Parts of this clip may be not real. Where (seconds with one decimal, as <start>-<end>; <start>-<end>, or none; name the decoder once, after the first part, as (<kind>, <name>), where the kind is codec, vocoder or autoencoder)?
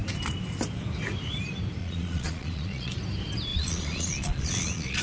1.8-2.9 (vocoder, Vocos); 3.5-5.0